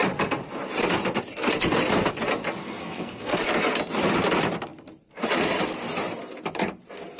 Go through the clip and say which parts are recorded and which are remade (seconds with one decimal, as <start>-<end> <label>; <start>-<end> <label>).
0.0-2.6 recorded; 2.6-3.4 remade; 3.4-7.2 recorded